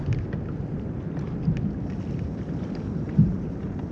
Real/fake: real